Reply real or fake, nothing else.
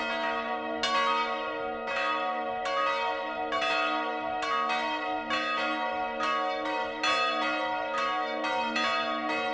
real